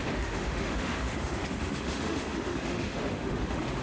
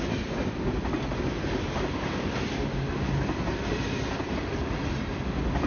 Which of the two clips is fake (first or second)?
first